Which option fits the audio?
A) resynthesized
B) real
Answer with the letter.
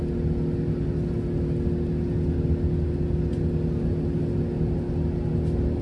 B